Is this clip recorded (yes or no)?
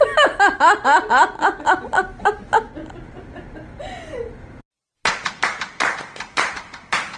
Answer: yes